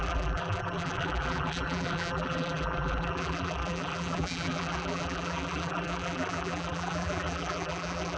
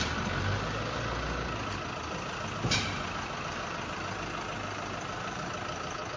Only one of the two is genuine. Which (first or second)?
second